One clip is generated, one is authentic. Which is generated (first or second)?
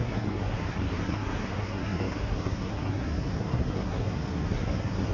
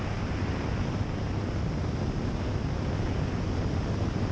first